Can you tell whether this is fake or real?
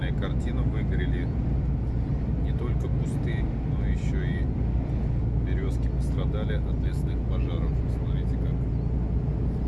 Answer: real